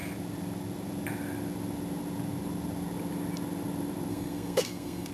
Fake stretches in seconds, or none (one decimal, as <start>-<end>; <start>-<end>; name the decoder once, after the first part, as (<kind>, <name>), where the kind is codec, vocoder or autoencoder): 4.1-5.1 (codec, SNAC)